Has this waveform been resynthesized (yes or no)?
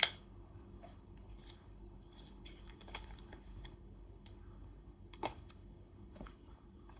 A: yes